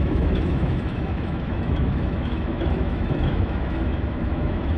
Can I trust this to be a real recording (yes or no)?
no